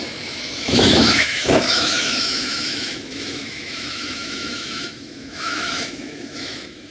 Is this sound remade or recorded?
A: remade